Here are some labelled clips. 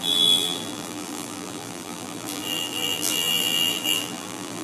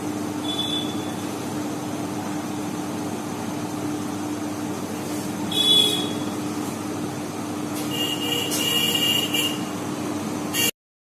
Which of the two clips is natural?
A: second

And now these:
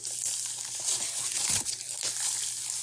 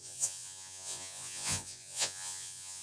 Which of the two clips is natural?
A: first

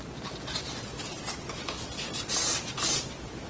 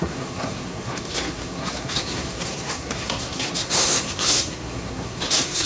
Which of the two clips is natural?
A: first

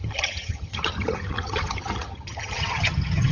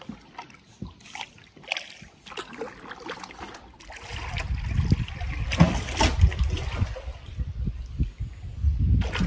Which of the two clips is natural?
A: second